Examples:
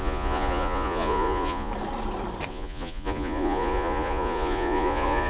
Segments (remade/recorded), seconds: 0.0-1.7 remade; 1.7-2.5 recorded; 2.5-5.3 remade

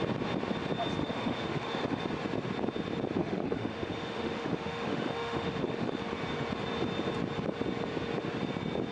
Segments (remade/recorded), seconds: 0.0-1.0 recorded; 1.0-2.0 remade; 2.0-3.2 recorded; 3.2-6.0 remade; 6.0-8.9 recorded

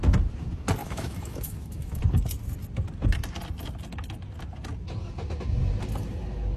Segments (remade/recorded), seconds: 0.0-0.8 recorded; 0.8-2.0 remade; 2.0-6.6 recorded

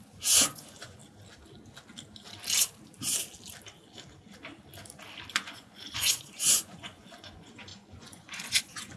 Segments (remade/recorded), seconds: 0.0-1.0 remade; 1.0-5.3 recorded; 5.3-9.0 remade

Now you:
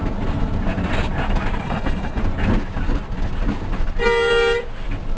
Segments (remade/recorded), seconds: 0.0-1.6 recorded; 1.6-2.2 remade; 2.2-5.2 recorded

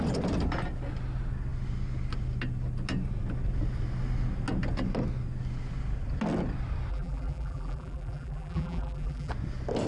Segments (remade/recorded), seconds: 0.0-6.9 recorded; 6.9-9.3 remade; 9.3-9.9 recorded

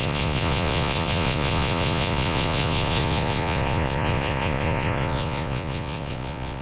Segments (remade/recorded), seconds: 0.0-6.6 remade

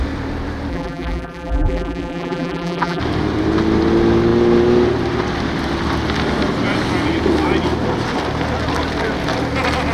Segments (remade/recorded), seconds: 0.0-0.7 recorded; 0.7-3.0 remade; 3.0-9.9 recorded